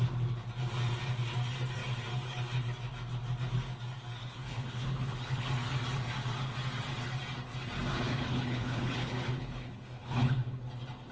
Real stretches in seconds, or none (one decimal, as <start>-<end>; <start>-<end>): 0.0-4.2; 5.5-7.9; 10.6-11.1